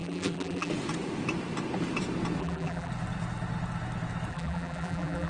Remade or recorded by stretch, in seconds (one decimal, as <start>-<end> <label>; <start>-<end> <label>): 0.0-0.7 remade; 0.7-2.4 recorded; 2.4-2.9 remade; 2.9-4.3 recorded; 4.3-5.3 remade